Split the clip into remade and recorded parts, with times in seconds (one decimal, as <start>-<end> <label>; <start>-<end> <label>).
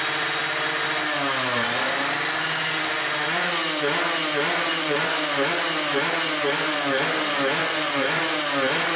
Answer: 0.0-4.7 recorded; 4.7-5.2 remade; 5.2-7.6 recorded; 7.6-8.2 remade; 8.2-9.0 recorded